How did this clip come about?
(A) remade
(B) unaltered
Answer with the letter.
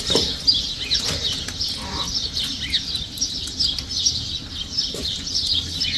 B